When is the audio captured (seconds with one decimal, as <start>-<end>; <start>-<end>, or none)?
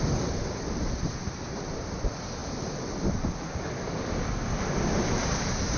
0.0-5.8